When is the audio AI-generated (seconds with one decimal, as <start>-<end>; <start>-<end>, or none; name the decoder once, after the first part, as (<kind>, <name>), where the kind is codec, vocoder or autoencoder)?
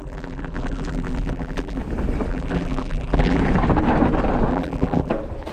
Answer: 0.0-1.8 (vocoder, BigVGAN v2); 2.3-3.4; 4.5-5.1